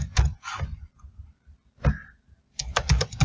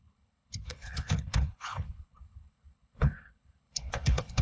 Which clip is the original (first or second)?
first